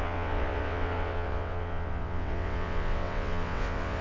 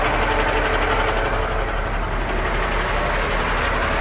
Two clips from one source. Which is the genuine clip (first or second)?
second